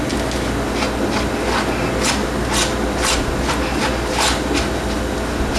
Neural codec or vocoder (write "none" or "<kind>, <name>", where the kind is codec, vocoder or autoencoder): none